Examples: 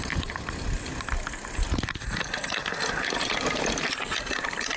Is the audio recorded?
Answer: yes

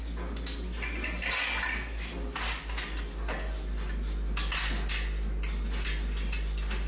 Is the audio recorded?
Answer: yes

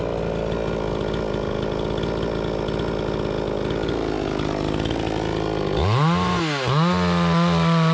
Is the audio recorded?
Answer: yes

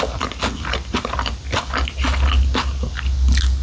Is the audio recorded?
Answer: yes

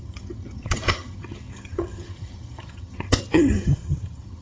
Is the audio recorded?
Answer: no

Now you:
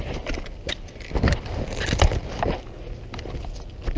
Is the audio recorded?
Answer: yes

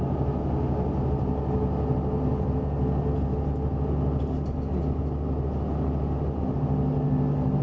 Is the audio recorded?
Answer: yes